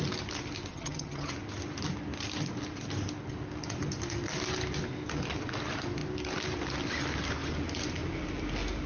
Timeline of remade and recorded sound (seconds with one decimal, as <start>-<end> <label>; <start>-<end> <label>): 0.0-0.7 recorded; 0.7-1.3 remade; 1.3-8.9 recorded